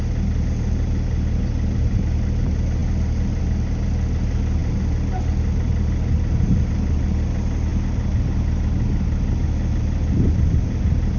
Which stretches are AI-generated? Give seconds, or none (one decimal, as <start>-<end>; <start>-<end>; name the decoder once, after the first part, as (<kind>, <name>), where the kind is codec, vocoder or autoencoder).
none